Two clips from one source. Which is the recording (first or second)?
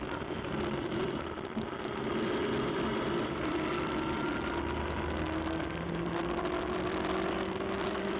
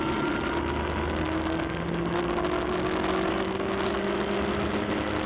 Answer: second